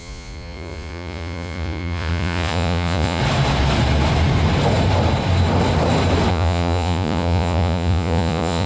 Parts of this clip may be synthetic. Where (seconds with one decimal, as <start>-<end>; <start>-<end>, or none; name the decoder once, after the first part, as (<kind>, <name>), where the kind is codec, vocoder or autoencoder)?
0.0-3.2 (vocoder, Vocos); 6.3-8.7